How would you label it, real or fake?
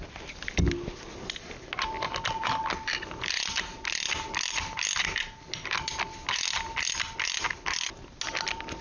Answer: real